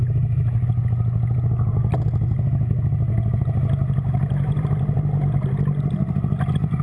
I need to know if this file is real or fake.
real